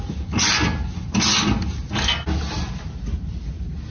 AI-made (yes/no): no